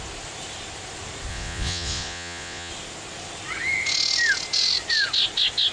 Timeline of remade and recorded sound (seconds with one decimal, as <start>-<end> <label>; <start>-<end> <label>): 0.0-1.3 recorded; 1.3-2.7 remade; 2.7-5.7 recorded